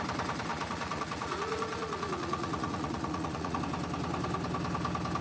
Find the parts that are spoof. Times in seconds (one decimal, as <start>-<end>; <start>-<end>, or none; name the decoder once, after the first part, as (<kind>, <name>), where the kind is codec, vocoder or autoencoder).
0.5-3.6 (vocoder, Vocos)